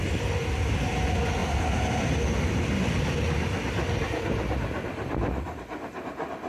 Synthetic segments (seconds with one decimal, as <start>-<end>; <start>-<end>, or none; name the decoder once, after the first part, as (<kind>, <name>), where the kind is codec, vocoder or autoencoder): none